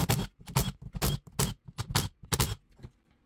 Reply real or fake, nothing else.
real